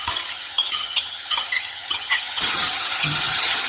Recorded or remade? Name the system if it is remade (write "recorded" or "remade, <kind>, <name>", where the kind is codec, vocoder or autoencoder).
remade, vocoder, HiFi-GAN